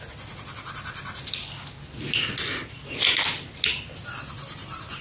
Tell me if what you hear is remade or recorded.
recorded